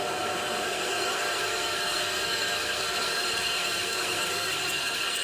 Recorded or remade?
remade